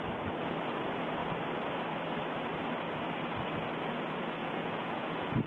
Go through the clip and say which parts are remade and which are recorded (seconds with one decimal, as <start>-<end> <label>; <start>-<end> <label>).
0.0-4.4 recorded; 4.4-5.5 remade